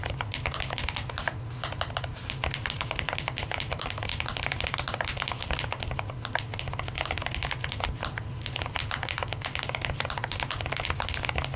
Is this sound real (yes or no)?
yes